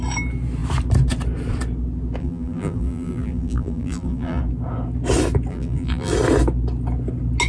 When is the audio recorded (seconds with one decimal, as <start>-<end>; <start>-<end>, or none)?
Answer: 0.0-2.2; 4.4-5.5; 6.1-7.5